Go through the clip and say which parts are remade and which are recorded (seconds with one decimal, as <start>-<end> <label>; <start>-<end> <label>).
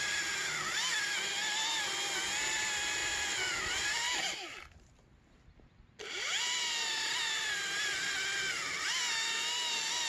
0.0-10.1 recorded